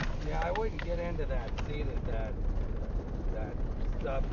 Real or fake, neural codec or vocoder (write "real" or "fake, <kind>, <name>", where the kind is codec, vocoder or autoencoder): real